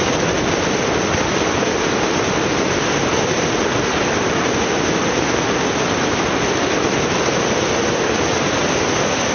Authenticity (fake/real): real